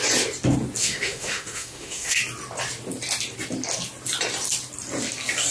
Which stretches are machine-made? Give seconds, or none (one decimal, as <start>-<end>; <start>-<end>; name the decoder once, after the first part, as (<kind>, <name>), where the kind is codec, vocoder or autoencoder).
0.8-2.2 (autoencoder, DAC-VAE)